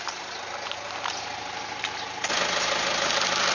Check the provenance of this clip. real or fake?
real